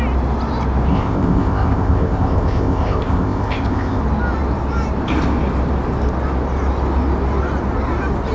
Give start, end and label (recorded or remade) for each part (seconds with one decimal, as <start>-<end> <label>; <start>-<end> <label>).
0.0-0.9 recorded; 0.9-4.0 remade; 4.0-8.3 recorded